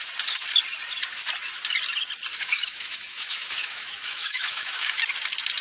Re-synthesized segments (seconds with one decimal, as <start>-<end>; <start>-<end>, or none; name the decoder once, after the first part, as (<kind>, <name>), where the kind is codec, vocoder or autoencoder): 2.3-4.9 (autoencoder, DAC-VAE)